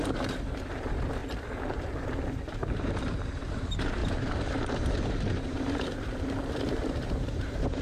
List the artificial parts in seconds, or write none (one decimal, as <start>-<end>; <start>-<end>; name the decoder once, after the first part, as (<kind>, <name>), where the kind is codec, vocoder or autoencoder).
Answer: 0.0-1.2 (vocoder, BigVGAN v2); 2.4-7.8